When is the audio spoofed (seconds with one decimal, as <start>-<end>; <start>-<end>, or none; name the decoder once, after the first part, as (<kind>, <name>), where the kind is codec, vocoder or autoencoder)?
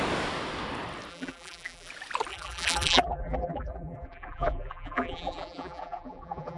1.1-1.9 (vocoder, BigVGAN v2); 2.3-6.6